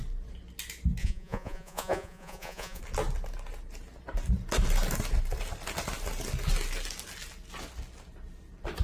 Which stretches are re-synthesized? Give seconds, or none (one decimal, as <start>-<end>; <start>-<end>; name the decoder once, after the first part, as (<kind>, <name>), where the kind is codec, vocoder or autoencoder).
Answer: 1.0-2.8 (vocoder, Vocos)